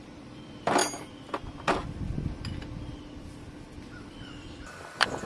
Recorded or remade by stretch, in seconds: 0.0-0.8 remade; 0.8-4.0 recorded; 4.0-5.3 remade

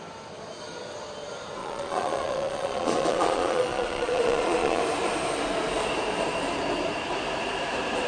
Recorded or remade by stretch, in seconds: 0.0-1.6 recorded; 1.6-4.8 remade; 4.8-8.1 recorded

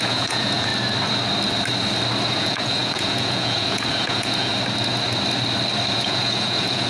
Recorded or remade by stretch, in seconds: 0.0-0.7 remade; 0.7-2.3 recorded; 2.3-4.5 remade; 4.5-5.9 recorded; 5.9-6.9 remade

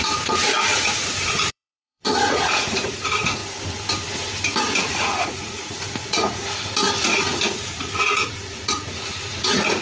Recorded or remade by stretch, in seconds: 0.0-3.4 remade; 3.4-4.6 recorded; 4.6-6.4 remade; 6.4-6.9 recorded; 6.9-9.8 remade